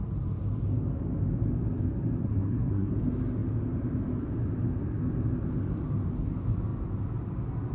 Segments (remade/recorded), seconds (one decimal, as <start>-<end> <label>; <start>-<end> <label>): 0.0-2.2 recorded; 2.2-2.9 remade; 2.9-7.7 recorded